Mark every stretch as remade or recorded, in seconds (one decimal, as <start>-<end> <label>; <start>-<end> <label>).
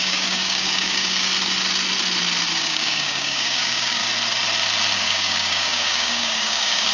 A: 0.0-1.3 remade; 1.3-2.6 recorded; 2.6-4.0 remade; 4.0-5.0 recorded; 5.0-6.9 remade